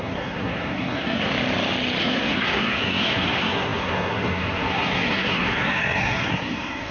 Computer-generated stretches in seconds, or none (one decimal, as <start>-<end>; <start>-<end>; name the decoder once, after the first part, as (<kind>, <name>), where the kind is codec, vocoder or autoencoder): 0.0-1.3 (codec, SNAC); 2.0-6.9